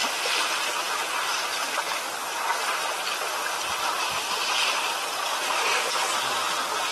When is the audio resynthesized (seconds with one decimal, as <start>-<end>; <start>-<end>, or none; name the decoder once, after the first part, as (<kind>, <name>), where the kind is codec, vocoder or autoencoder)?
0.0-0.7 (vocoder, BigVGAN v2); 1.5-5.6